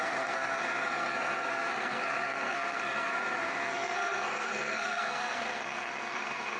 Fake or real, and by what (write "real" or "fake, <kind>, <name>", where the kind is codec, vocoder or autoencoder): fake, codec, SNAC